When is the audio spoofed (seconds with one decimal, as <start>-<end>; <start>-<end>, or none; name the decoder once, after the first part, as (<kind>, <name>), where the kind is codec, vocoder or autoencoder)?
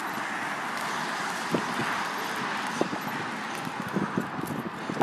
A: none